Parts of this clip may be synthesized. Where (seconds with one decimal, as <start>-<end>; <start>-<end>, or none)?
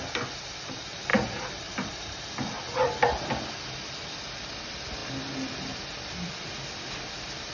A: none